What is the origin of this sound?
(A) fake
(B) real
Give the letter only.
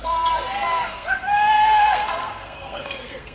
A